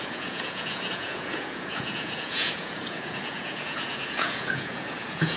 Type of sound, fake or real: fake